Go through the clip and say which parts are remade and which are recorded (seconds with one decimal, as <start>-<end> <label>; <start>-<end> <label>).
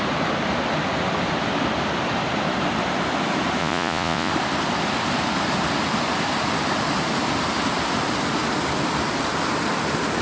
0.0-3.6 recorded; 3.6-4.3 remade; 4.3-10.2 recorded